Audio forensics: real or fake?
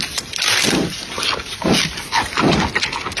real